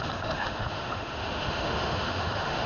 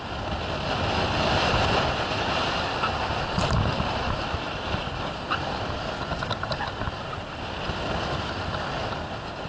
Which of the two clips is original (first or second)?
second